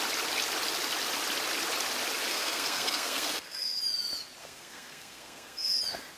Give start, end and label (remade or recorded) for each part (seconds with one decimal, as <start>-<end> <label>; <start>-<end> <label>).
0.0-2.3 recorded; 2.3-3.8 remade; 3.8-4.4 recorded; 4.4-5.8 remade; 5.8-6.2 recorded